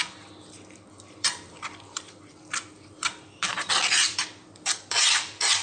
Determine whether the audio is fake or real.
fake